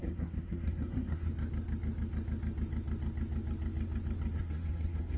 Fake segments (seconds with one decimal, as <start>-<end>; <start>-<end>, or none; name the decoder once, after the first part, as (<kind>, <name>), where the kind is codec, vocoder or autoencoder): 0.0-1.3 (codec, SNAC); 4.3-5.2